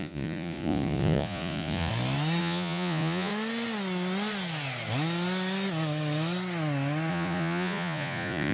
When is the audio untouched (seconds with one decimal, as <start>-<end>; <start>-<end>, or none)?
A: 1.9-2.4; 3.3-7.1